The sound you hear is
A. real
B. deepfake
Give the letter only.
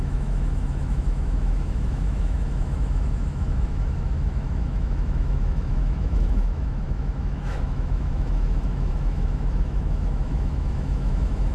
B